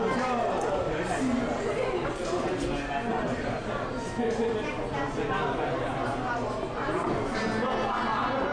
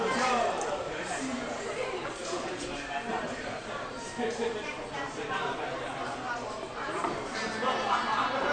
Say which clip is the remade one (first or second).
second